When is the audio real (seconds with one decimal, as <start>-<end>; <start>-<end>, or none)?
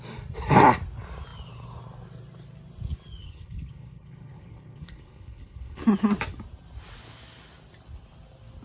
0.0-3.2; 5.8-8.6